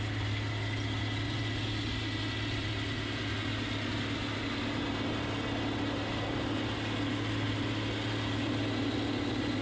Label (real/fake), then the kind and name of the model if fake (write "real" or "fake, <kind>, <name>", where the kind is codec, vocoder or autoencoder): real